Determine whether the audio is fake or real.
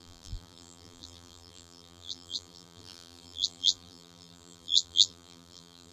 fake